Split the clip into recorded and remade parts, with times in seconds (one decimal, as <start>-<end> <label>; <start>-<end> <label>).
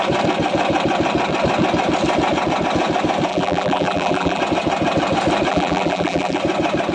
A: 0.0-3.3 recorded; 3.3-4.4 remade; 4.4-5.5 recorded; 5.5-6.4 remade; 6.4-6.9 recorded